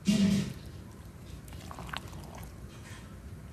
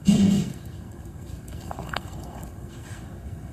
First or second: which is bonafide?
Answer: first